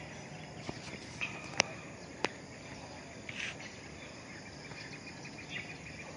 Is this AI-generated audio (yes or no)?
no